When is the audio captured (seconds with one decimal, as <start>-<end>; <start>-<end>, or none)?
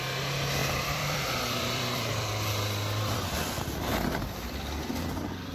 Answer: 0.0-0.6; 3.9-5.5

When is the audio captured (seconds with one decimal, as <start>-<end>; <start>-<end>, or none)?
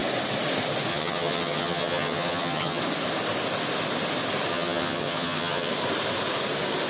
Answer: 0.0-0.9; 2.8-4.5; 5.7-6.9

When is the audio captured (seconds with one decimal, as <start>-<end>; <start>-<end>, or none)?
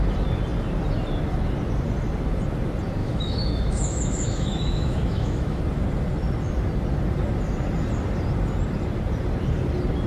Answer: 0.0-3.0; 5.6-10.1